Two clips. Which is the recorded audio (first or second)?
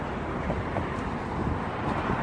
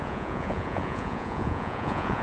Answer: first